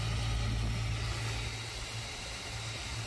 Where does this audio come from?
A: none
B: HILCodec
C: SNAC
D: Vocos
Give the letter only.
A